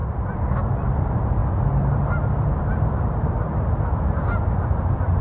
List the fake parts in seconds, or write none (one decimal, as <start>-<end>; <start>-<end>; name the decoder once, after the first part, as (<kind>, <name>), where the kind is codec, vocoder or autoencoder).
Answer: none